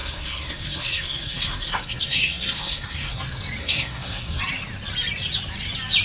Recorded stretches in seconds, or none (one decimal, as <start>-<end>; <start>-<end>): 3.2-3.6; 4.4-6.0